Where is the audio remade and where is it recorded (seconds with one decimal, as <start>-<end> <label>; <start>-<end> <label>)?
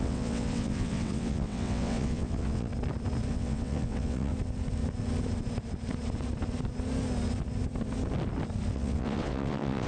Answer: 0.0-2.7 remade; 2.7-3.3 recorded; 3.3-4.3 remade; 4.3-8.7 recorded; 8.7-9.9 remade